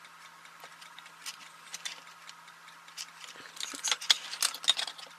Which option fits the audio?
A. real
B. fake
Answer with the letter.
A